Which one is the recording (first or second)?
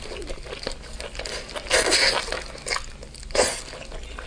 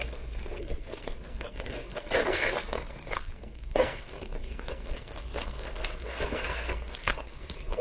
first